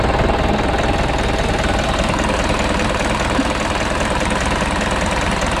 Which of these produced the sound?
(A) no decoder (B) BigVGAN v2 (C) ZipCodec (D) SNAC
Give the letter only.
A